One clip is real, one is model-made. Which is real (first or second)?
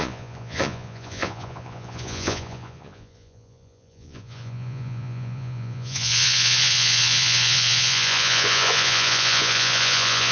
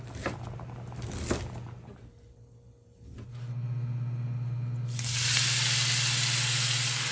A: second